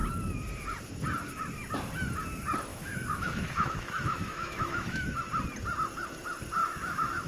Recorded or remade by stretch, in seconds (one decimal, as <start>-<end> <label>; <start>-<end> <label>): 0.0-2.7 recorded; 2.7-5.3 remade; 5.3-6.6 recorded; 6.6-7.3 remade